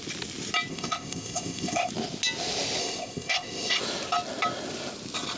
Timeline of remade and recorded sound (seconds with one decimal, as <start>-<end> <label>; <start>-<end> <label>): 0.0-0.7 recorded; 0.7-1.9 remade; 1.9-2.8 recorded; 2.8-3.8 remade; 3.8-5.4 recorded